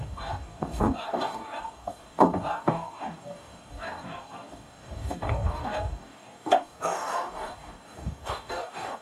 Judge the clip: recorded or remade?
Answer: remade